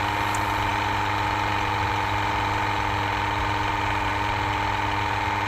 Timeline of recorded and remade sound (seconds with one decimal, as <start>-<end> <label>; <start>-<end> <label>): 0.0-5.5 recorded